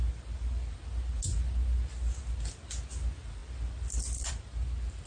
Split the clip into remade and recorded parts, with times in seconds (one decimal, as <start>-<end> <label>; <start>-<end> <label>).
0.0-5.1 recorded